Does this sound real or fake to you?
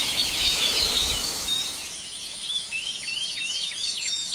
fake